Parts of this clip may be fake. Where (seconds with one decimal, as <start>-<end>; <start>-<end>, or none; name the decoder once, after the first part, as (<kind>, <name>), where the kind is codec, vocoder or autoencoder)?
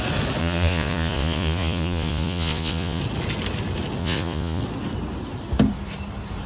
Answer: 0.4-3.0 (vocoder, Vocos); 4.0-4.6